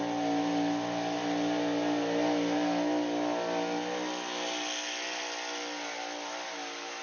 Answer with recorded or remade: recorded